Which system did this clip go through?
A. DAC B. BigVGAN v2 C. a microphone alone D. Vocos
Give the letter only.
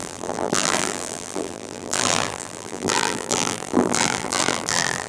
B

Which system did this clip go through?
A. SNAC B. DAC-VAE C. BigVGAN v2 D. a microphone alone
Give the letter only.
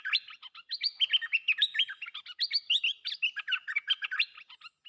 D